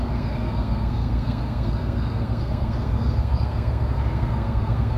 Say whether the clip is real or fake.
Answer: fake